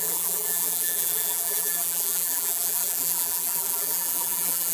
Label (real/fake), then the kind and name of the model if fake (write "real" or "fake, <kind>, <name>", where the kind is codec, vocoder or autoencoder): fake, vocoder, BigVGAN v2